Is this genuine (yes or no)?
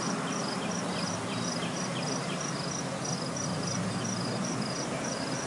yes